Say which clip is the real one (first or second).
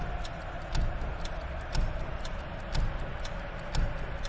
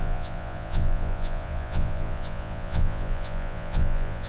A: first